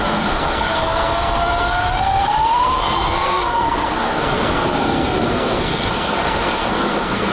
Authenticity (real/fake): fake